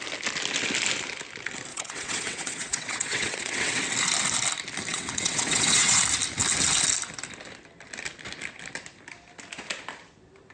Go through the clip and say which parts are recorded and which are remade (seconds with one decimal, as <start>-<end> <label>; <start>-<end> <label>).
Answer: 0.0-1.7 recorded; 1.7-3.8 remade; 3.8-4.9 recorded; 4.9-6.0 remade; 6.0-10.5 recorded